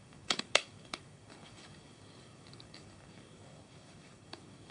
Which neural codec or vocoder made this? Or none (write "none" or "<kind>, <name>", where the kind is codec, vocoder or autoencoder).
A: codec, DAC